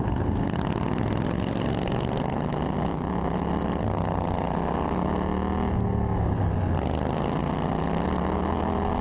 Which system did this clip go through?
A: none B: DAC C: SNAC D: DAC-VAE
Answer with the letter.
A